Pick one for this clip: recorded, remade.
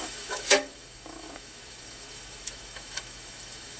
remade